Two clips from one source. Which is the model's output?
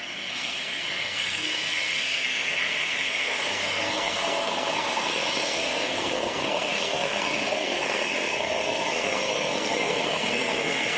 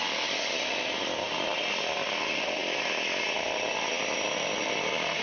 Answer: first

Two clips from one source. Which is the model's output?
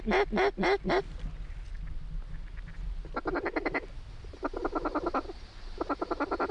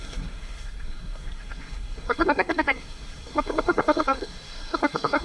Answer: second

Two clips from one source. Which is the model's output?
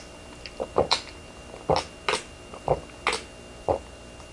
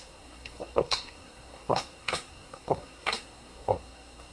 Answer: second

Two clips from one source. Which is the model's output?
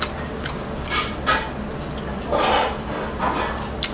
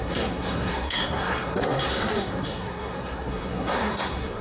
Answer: second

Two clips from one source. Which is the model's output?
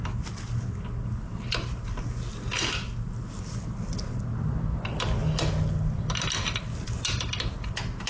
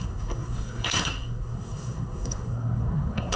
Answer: second